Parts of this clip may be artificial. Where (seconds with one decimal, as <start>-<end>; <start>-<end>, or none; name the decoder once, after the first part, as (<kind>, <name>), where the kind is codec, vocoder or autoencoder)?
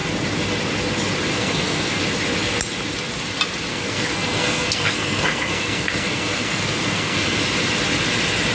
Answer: 1.3-2.0 (codec, SNAC); 3.7-7.4